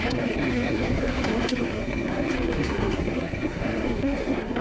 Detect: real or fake fake